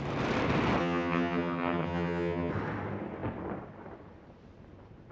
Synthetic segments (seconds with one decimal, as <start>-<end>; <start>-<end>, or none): 0.8-2.5